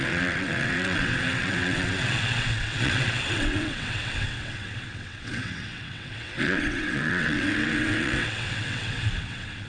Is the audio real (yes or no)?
no